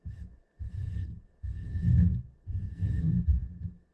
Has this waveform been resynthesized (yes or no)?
yes